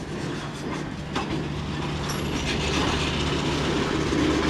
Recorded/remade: recorded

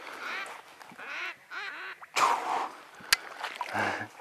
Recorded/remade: recorded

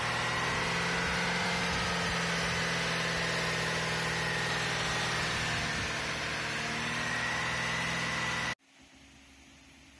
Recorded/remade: recorded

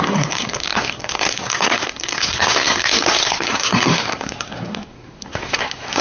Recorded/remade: remade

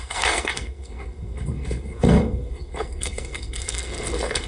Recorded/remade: remade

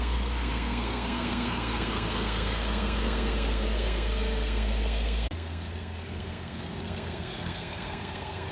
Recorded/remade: remade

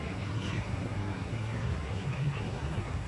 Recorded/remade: remade